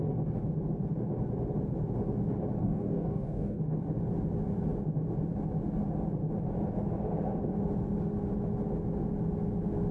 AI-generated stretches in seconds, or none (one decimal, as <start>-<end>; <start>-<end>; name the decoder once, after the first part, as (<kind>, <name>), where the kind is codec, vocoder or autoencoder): 2.6-3.6 (codec, DAC)